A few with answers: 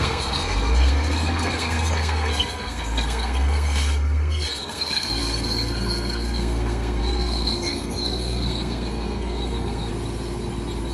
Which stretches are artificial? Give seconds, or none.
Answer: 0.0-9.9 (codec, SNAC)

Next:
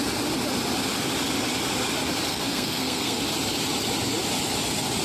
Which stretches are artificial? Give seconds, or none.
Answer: 2.3-3.2 (codec, SNAC)

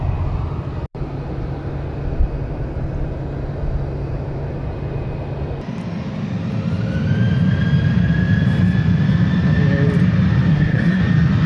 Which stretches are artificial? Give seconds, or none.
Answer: 10.5-11.0 (codec, SNAC)

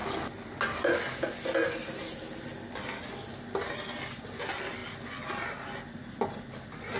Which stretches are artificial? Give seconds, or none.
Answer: none

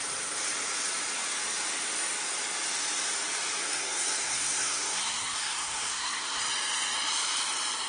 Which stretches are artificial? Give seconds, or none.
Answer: 3.6-6.4 (codec, SNAC)

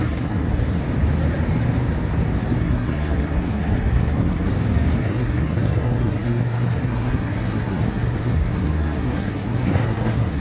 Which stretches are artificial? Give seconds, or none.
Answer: 0.0-0.8 (codec, SNAC); 2.6-4.5; 5.0-10.4